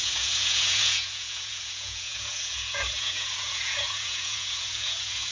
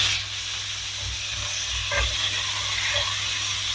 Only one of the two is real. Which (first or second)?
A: second